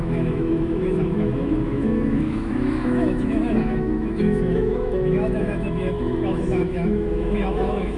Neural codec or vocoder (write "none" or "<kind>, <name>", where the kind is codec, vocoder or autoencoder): autoencoder, DAC-VAE